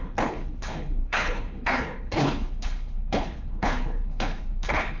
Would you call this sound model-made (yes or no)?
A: yes